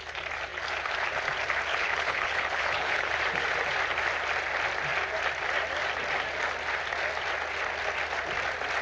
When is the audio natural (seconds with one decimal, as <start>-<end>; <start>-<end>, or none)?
0.0-1.7; 3.1-8.8